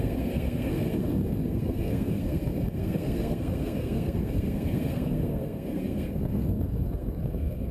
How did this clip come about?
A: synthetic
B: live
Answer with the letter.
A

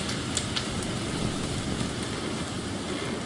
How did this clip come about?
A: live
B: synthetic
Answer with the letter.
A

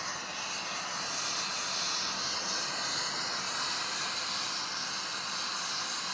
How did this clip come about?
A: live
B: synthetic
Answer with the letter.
A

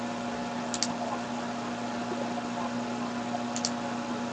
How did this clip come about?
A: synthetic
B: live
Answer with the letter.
B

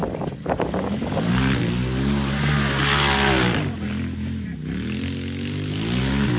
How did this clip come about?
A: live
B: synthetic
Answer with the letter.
A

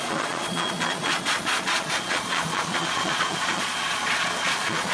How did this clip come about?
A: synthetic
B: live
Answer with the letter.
A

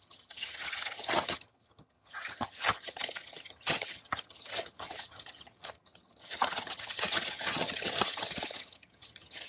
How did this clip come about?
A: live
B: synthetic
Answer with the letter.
B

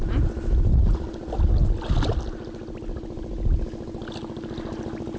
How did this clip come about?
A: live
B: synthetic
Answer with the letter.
A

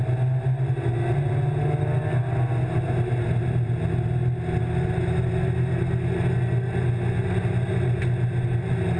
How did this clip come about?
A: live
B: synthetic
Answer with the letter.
A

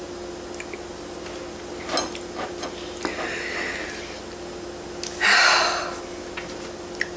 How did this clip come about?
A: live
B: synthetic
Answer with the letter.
A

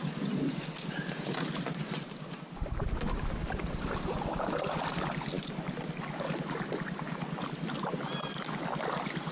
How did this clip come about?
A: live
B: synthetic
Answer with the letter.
A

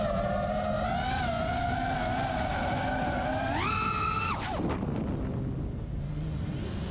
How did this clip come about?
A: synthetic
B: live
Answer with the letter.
B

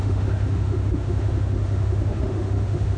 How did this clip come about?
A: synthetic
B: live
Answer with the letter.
A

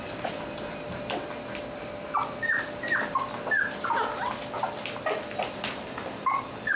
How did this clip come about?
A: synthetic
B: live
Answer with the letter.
B